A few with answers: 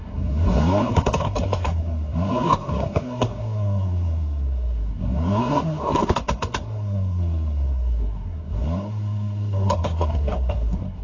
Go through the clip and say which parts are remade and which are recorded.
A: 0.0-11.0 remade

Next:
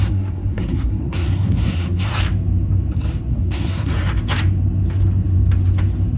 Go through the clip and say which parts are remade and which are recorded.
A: 0.0-2.1 remade; 2.1-3.3 recorded; 3.3-3.9 remade; 3.9-6.2 recorded

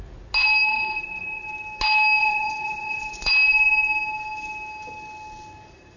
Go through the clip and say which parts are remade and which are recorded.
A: 0.0-0.7 recorded; 0.7-1.5 remade; 1.5-2.2 recorded; 2.2-3.3 remade; 3.3-6.0 recorded

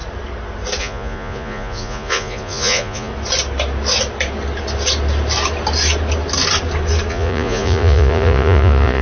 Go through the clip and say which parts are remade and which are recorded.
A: 0.0-0.8 recorded; 0.8-3.1 remade; 3.1-7.1 recorded; 7.1-9.0 remade